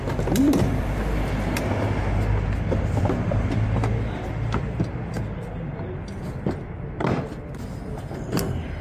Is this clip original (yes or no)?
yes